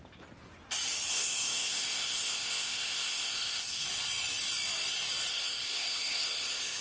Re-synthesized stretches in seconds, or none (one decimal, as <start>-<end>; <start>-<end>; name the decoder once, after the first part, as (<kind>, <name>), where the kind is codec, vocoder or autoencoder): 1.1-3.8 (codec, ZipCodec); 5.3-6.8